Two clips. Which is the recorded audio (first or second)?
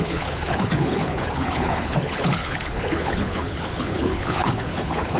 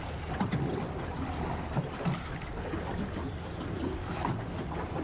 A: second